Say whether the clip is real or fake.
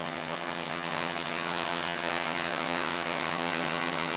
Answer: fake